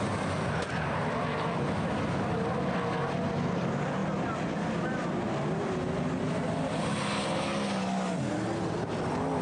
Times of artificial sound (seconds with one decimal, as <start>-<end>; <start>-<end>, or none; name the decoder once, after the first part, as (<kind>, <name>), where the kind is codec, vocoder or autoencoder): none